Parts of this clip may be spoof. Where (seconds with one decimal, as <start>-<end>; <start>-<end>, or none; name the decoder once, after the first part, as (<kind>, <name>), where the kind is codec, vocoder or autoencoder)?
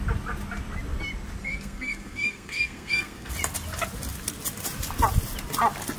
1.4-3.3 (codec, SNAC)